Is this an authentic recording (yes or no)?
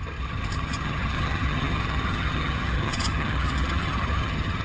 no